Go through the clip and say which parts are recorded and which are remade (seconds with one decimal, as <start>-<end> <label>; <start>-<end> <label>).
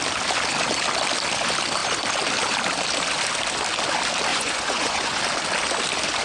0.0-4.3 recorded; 4.3-5.2 remade; 5.2-6.2 recorded